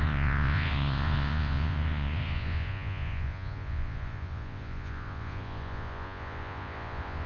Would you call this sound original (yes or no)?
no